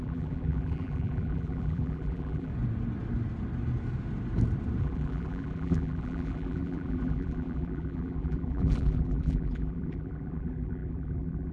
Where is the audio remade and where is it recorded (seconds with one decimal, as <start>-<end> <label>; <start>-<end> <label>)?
0.0-2.5 remade; 2.5-4.8 recorded; 4.8-11.5 remade